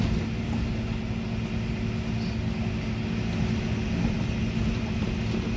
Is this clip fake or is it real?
real